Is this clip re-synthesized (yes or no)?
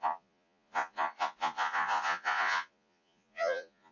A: yes